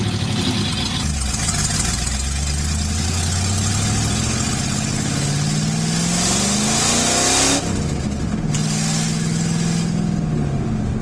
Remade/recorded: recorded